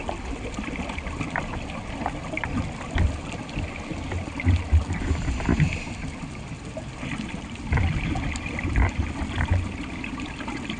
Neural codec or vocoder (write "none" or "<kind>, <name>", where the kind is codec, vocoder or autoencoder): none